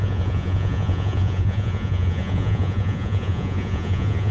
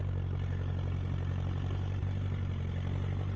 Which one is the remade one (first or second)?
first